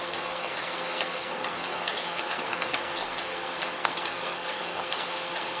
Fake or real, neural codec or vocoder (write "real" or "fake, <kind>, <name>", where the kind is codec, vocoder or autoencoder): fake, codec, SNAC